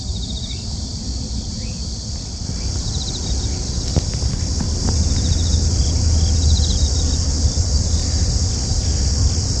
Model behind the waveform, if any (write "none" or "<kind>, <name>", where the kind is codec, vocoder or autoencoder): none